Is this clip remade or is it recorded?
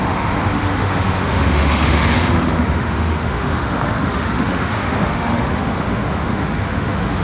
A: remade